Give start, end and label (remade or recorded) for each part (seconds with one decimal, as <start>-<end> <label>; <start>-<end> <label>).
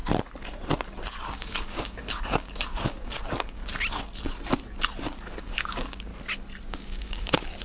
0.0-1.3 recorded; 1.3-3.6 remade; 3.6-5.4 recorded; 5.4-6.1 remade; 6.1-6.7 recorded; 6.7-7.6 remade